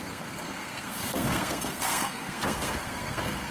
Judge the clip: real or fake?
fake